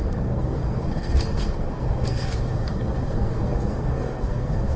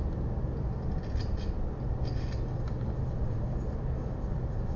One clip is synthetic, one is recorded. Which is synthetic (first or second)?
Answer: first